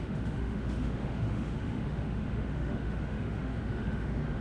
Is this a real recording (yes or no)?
no